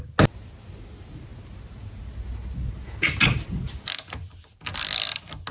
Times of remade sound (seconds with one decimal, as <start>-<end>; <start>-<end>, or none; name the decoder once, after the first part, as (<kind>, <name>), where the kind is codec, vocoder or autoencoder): none